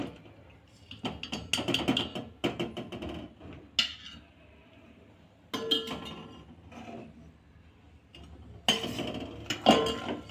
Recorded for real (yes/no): yes